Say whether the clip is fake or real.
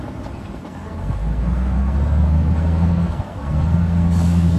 fake